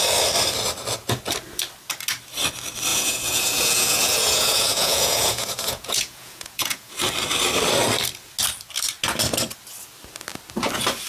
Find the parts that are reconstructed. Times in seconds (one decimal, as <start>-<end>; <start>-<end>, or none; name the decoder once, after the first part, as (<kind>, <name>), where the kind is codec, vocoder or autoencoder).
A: 2.9-6.9 (vocoder, Vocos)